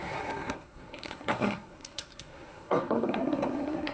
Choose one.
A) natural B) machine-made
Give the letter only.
B